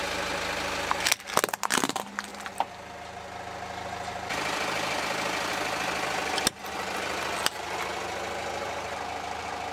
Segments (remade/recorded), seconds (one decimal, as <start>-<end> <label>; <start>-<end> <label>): 0.0-9.7 recorded